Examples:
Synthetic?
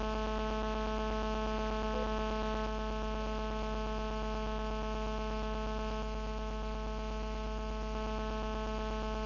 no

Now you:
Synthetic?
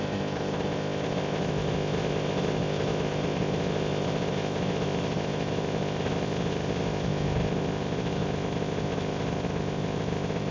yes